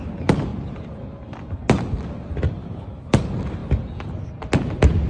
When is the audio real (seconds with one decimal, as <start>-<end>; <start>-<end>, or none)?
0.0-2.6; 3.2-5.1